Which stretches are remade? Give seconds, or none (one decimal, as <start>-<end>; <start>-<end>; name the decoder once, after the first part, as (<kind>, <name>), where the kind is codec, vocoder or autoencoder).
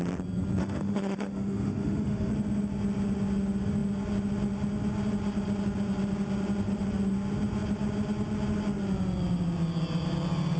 0.6-2.3 (autoencoder, DAC-VAE)